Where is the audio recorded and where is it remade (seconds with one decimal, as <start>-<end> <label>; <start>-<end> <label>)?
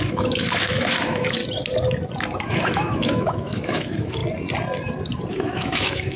0.0-1.4 remade; 1.4-2.4 recorded; 2.4-4.2 remade; 4.2-5.3 recorded; 5.3-6.2 remade